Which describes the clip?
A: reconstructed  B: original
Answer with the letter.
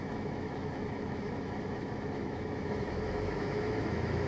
A